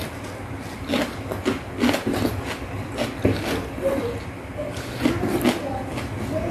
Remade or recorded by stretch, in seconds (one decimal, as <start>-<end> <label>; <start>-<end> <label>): 0.0-6.5 recorded